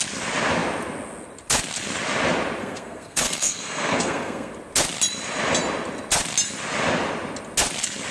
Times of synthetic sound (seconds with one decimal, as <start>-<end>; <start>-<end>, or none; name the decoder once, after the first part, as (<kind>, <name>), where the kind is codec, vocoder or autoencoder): 2.6-4.5 (codec, SNAC)